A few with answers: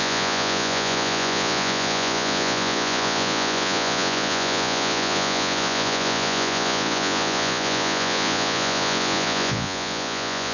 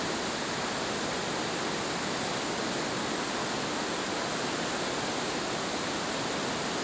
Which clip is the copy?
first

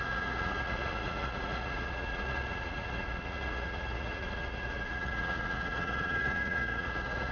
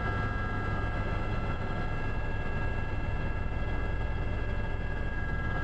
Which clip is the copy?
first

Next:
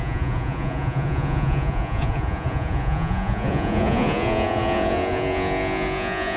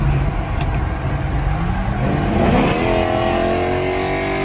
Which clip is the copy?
first